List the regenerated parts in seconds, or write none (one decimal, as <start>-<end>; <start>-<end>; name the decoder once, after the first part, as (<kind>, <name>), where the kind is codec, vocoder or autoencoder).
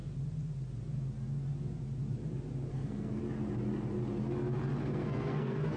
2.7-3.2 (codec, SNAC); 4.8-5.8